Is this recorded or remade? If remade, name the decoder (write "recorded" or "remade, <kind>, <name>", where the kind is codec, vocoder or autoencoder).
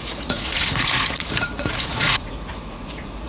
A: remade, vocoder, Vocos